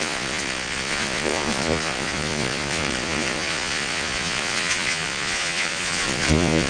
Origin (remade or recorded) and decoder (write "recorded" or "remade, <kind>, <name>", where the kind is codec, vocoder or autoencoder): remade, vocoder, Vocos